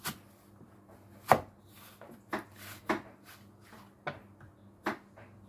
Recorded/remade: recorded